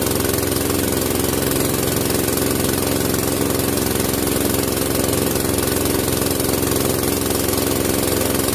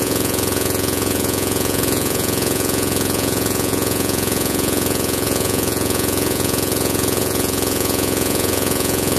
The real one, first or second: first